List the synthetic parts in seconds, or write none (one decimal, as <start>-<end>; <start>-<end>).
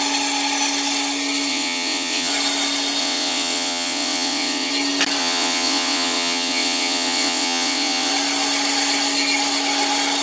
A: 1.5-2.3; 3.0-4.7; 5.2-8.1